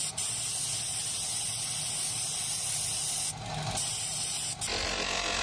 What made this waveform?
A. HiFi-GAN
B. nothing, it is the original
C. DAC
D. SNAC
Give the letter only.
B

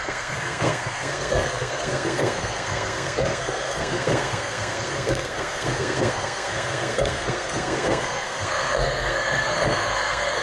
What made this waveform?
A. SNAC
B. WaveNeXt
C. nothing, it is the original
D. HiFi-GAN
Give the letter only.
A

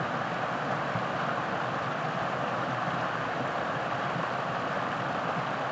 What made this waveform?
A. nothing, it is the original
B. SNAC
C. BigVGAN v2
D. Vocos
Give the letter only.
A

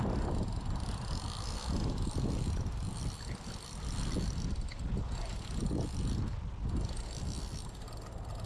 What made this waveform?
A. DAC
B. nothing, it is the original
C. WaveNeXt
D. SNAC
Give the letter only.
B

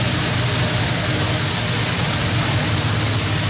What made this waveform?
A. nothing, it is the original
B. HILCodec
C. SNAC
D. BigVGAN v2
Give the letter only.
A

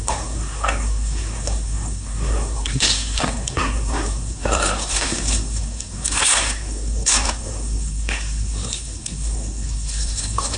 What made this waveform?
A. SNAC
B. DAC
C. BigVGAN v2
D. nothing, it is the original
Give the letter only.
A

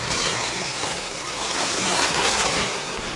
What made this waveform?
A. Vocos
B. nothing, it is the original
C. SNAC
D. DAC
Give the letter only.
C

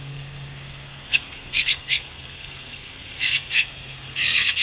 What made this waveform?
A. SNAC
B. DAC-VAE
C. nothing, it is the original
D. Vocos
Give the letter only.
A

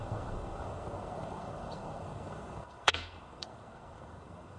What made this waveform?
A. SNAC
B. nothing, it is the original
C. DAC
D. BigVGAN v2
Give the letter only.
A